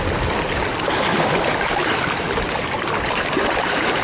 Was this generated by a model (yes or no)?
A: no